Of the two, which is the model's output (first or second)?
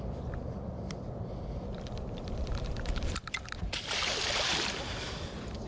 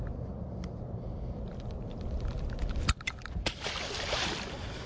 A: first